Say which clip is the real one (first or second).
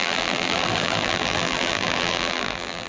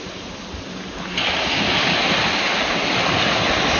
second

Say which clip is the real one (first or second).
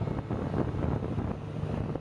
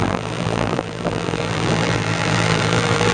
first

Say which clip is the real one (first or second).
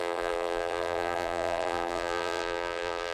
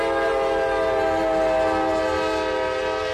second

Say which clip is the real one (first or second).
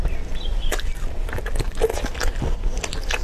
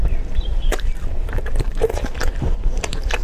first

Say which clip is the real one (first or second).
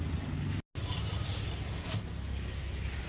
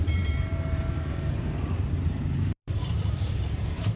first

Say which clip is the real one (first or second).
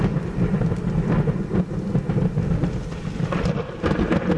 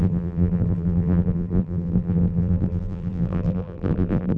first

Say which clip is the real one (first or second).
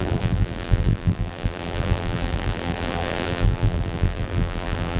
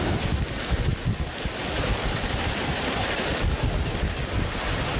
second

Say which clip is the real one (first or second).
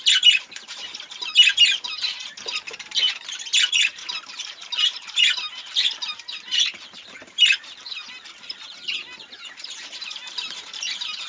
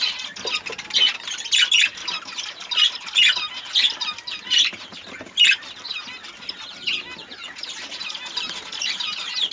second